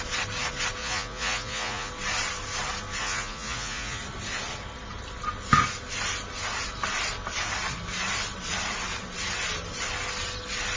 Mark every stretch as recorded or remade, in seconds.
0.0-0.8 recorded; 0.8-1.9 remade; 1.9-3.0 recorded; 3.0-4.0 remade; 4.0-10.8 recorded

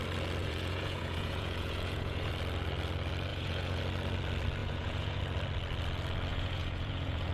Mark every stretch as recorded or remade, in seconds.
0.0-0.4 recorded; 0.4-2.3 remade; 2.3-3.3 recorded; 3.3-3.8 remade; 3.8-4.6 recorded; 4.6-5.2 remade; 5.2-6.3 recorded; 6.3-7.3 remade

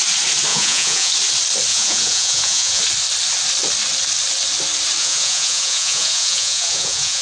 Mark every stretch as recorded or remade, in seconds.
0.0-0.5 recorded; 0.5-1.1 remade; 1.1-1.7 recorded; 1.7-2.8 remade; 2.8-5.0 recorded; 5.0-7.2 remade

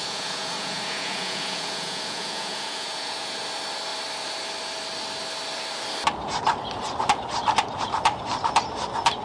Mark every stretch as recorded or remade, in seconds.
0.0-3.3 remade; 3.3-9.2 recorded

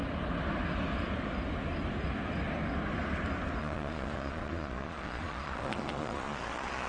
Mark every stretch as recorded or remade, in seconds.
0.0-3.6 recorded; 3.6-6.9 remade